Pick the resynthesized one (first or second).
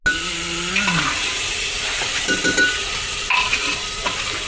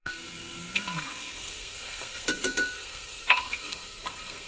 second